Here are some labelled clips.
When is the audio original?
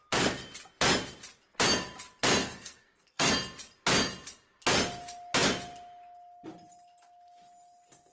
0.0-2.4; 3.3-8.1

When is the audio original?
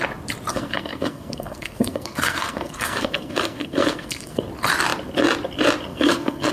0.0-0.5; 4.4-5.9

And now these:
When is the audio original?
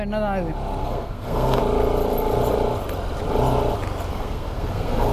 0.0-0.8; 1.6-4.1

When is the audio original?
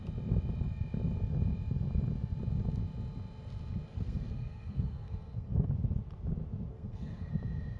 0.0-3.9; 5.7-6.7; 7.3-7.8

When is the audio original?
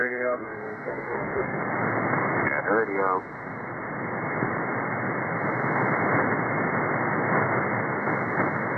1.6-8.8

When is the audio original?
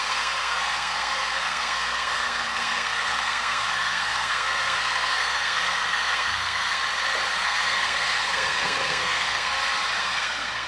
6.8-7.4; 9.5-10.0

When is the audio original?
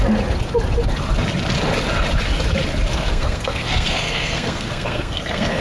0.0-2.9